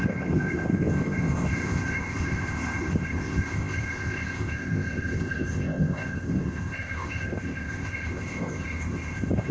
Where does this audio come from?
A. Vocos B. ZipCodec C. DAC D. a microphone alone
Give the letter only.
B